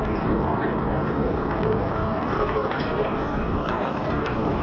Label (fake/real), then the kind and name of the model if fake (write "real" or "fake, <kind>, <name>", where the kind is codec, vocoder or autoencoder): fake, codec, DAC